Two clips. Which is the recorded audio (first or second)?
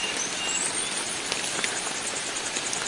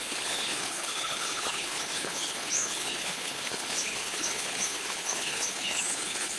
first